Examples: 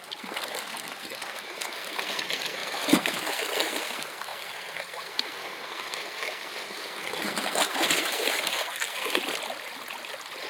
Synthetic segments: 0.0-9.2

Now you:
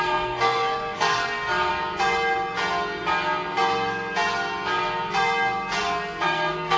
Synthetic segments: 0.0-1.7; 5.8-6.8

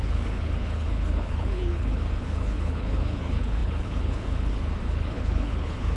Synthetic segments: 0.0-6.0

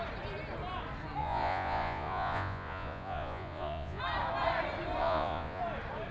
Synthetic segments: 1.2-4.0; 5.0-5.6

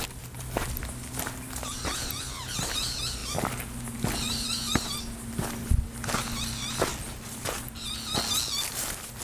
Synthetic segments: none

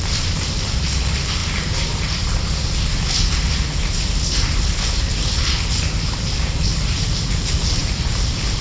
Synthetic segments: 0.0-1.4; 6.2-8.6

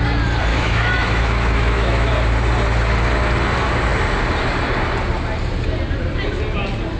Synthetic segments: 0.5-2.1

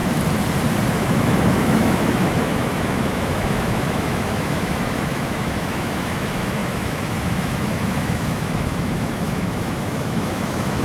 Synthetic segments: 0.9-10.8